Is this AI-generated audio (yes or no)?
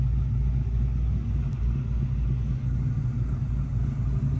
no